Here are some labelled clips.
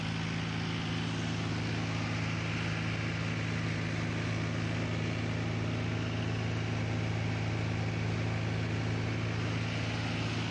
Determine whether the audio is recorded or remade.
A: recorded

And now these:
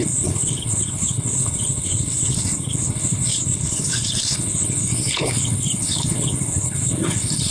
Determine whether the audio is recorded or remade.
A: remade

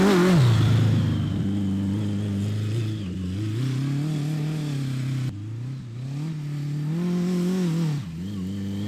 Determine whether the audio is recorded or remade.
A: recorded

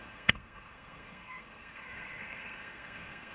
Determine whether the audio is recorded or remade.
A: remade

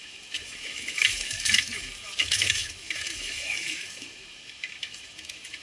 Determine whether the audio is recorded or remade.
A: remade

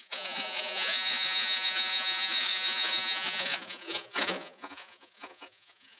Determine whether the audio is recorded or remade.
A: remade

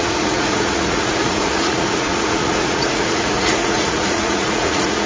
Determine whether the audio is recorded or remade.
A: remade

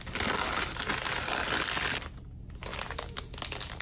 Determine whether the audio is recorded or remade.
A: recorded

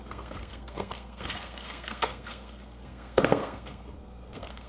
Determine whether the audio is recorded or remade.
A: remade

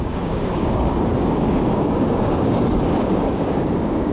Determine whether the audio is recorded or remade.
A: remade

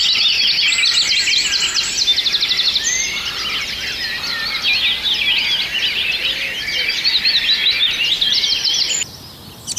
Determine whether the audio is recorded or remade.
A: recorded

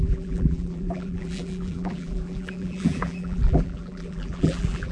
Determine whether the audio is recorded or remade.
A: remade